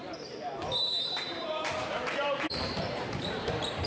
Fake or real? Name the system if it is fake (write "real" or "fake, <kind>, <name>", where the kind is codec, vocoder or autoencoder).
fake, vocoder, BigVGAN v2